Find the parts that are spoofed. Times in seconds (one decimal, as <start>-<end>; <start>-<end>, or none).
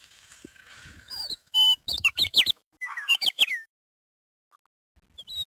0.0-4.3